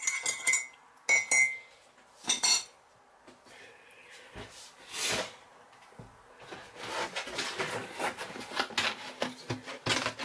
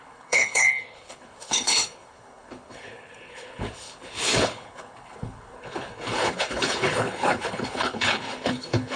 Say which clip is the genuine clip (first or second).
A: first